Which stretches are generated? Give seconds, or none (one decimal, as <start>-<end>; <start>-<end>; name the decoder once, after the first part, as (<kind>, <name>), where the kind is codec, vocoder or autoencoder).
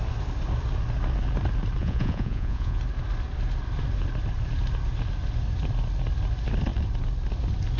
1.8-2.8 (vocoder, Vocos)